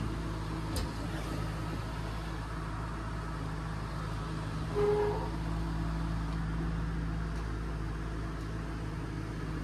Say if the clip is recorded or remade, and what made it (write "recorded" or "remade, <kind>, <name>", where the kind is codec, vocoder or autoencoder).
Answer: recorded